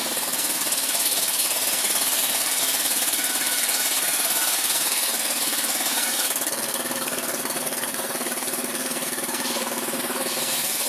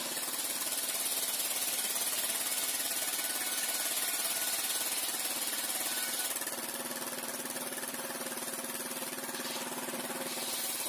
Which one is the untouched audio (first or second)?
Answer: second